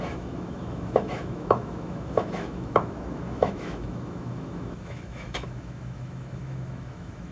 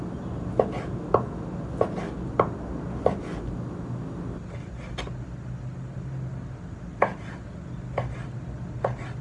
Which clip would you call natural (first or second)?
second